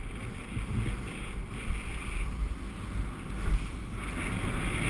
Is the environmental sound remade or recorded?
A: recorded